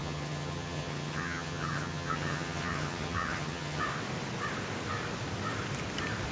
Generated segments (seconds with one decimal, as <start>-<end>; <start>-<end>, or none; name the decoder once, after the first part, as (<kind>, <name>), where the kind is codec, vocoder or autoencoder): 0.0-3.8 (vocoder, HiFi-GAN)